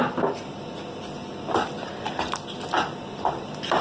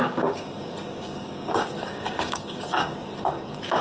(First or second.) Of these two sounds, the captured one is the first